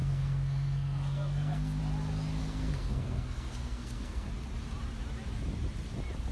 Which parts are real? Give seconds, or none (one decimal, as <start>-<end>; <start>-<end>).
1.8-2.4; 4.3-6.3